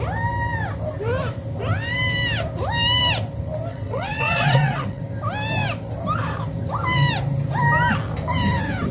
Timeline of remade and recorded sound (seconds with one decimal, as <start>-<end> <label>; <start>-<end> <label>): 0.0-3.7 recorded; 3.7-5.0 remade; 5.0-8.9 recorded